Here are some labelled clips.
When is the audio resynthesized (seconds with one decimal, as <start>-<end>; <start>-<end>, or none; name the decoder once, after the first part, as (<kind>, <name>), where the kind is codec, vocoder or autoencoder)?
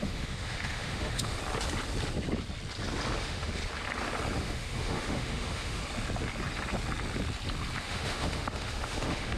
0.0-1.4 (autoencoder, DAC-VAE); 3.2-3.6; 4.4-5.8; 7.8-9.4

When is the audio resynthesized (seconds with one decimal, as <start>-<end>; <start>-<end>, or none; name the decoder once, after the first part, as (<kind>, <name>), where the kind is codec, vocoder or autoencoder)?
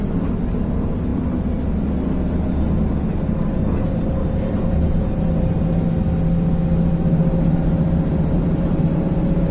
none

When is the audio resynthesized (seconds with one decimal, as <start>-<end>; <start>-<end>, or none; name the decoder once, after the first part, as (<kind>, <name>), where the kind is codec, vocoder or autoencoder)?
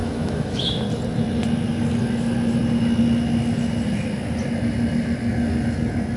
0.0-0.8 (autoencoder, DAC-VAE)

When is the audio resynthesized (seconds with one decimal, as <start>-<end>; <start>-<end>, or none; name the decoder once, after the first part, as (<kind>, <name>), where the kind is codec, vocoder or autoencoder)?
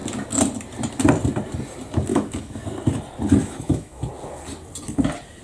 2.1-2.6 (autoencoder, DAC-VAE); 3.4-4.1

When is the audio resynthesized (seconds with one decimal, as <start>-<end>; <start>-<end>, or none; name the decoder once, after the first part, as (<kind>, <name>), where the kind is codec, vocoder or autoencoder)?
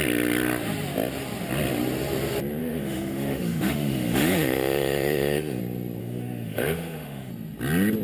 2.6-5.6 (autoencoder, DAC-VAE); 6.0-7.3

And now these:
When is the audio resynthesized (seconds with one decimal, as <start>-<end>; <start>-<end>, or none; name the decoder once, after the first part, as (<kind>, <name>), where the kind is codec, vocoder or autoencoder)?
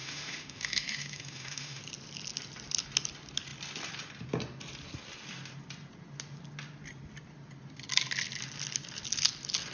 0.0-1.8 (autoencoder, DAC-VAE)